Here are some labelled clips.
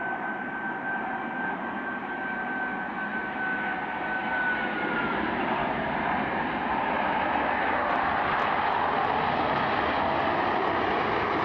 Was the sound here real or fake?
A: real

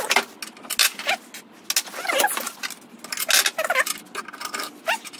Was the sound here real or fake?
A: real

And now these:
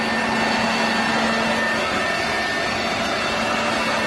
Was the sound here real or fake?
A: real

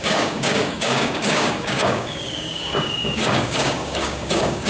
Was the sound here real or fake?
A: fake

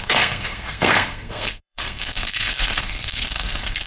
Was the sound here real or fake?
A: fake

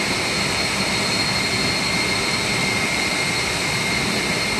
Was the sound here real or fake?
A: real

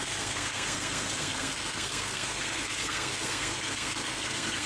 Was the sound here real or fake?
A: fake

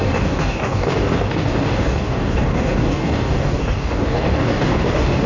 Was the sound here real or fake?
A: fake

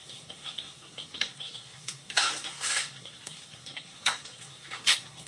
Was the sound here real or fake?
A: fake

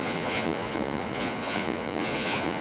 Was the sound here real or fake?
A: fake